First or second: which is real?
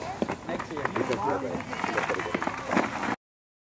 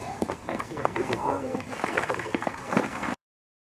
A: first